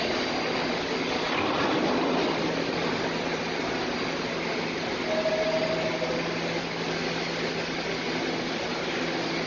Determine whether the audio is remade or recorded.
recorded